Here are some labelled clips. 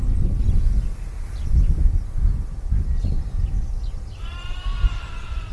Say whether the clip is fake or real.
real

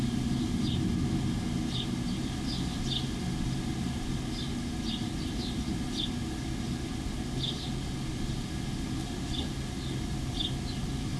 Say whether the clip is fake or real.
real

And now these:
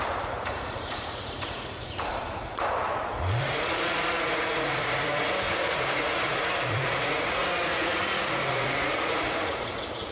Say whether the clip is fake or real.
fake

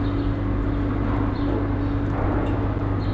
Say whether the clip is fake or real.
real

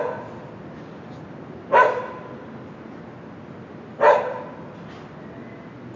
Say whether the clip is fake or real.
real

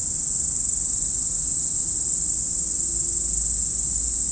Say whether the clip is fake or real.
real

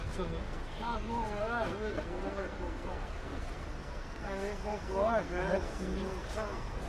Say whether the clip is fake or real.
fake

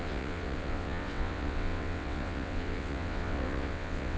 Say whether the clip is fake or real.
fake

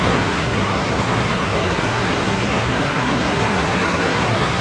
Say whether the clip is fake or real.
fake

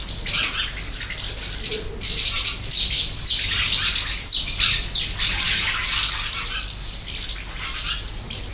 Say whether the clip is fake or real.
real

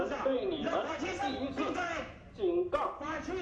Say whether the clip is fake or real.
fake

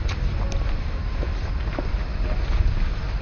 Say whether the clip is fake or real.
real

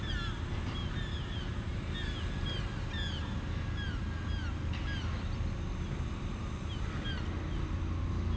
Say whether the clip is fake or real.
real